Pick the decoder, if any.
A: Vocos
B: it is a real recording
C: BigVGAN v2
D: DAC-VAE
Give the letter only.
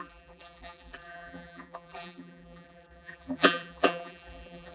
C